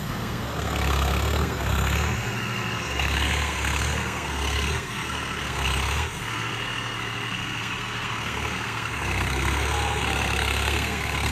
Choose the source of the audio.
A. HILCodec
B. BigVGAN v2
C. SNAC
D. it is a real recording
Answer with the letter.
C